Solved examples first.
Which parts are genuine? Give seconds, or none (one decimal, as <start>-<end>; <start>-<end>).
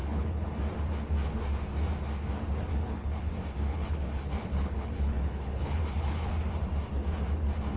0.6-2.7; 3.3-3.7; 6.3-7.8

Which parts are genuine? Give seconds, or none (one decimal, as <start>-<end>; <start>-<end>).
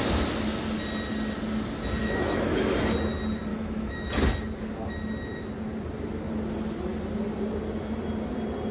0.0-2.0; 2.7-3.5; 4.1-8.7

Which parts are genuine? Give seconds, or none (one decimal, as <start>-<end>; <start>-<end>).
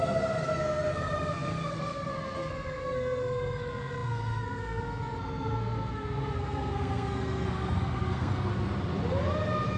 8.5-9.8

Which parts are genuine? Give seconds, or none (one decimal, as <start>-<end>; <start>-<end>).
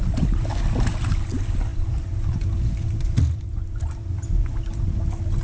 0.0-5.4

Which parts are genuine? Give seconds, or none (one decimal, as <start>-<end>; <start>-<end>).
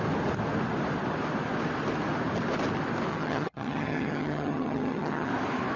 0.0-3.1; 5.3-5.8